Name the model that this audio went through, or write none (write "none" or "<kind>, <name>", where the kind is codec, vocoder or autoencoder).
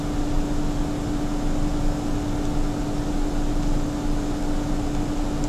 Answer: none